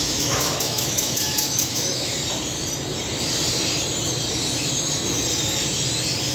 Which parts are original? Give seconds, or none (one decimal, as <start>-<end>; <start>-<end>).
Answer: 2.1-6.3